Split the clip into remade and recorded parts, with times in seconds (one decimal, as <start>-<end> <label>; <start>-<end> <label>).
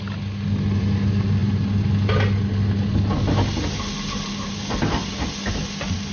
0.0-6.1 recorded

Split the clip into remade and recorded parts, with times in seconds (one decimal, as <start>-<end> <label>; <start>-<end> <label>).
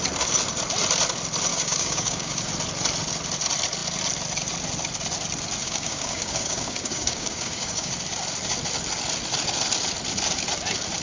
0.0-1.5 recorded; 1.5-2.5 remade; 2.5-5.6 recorded; 5.6-7.9 remade; 7.9-11.0 recorded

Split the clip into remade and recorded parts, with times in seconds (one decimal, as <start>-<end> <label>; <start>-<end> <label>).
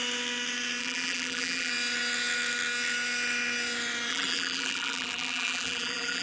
0.0-0.8 recorded; 0.8-1.7 remade; 1.7-4.1 recorded; 4.1-6.2 remade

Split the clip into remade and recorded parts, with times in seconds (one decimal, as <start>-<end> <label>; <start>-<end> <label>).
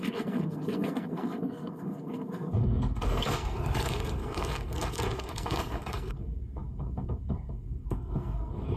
0.0-8.8 remade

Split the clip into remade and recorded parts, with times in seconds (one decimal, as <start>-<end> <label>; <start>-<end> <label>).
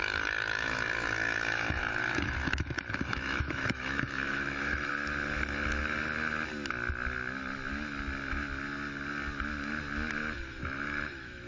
0.0-4.9 remade; 4.9-10.2 recorded; 10.2-11.5 remade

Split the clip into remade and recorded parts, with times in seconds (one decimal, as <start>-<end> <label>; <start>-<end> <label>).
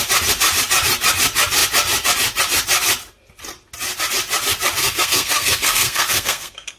0.0-4.8 recorded; 4.8-6.8 remade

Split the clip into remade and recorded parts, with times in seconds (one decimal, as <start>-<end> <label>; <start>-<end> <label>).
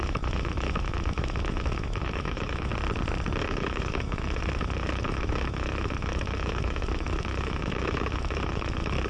0.0-2.7 remade; 2.7-3.4 recorded; 3.4-9.1 remade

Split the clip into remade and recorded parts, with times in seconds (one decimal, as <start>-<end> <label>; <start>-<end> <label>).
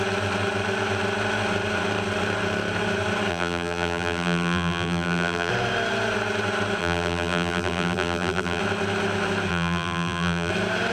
0.0-3.3 recorded; 3.3-5.5 remade; 5.5-6.8 recorded; 6.8-8.6 remade; 8.6-9.5 recorded; 9.5-10.5 remade; 10.5-10.9 recorded